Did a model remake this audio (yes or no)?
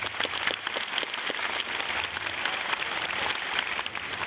no